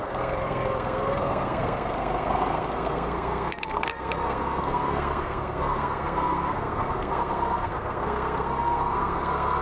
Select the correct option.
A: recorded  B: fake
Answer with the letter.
B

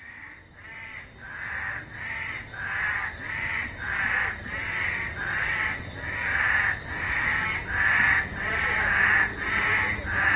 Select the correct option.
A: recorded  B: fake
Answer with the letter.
A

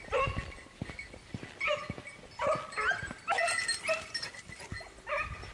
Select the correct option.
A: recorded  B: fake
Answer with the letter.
A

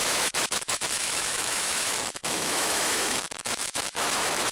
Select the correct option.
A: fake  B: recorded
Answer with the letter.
A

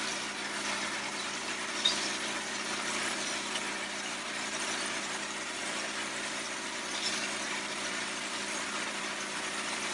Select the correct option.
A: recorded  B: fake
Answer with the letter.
B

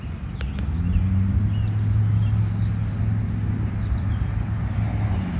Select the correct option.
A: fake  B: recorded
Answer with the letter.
B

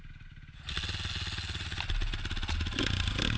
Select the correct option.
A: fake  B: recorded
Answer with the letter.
B